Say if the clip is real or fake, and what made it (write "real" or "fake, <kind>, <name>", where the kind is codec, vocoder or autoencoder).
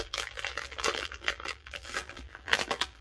fake, vocoder, BigVGAN v2